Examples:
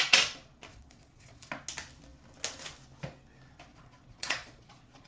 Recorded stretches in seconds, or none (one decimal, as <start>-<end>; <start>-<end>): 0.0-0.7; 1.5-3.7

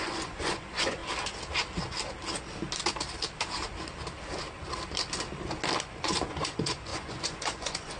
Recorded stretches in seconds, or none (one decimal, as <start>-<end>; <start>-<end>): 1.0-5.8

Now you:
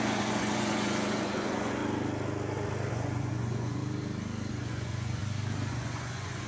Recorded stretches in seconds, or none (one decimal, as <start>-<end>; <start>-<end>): 1.8-2.9; 3.8-4.5; 5.2-5.7

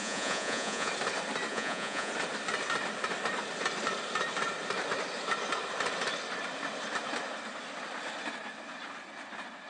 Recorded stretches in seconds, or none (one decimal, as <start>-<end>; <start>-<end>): 0.9-1.5; 2.1-9.7

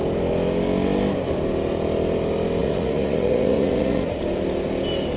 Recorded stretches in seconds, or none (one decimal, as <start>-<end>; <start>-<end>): 0.0-2.6; 4.2-5.2

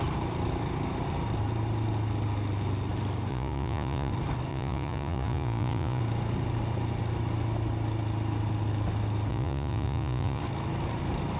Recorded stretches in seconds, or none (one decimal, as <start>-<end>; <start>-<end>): 0.0-3.3; 4.1-4.5; 6.0-9.3; 10.4-11.4